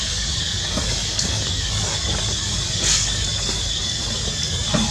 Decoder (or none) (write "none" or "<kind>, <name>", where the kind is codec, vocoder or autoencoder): codec, DAC